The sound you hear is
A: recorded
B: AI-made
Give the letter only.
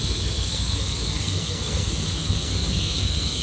B